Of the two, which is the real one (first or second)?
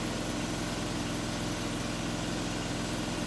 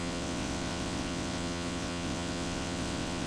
first